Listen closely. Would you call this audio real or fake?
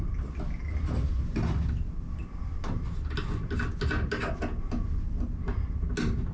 real